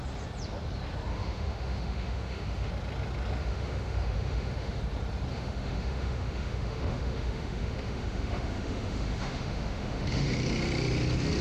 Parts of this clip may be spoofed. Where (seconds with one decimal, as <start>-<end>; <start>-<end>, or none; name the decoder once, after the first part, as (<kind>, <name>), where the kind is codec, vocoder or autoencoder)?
1.1-2.7 (autoencoder, DAC-VAE); 3.4-4.8; 5.3-10.3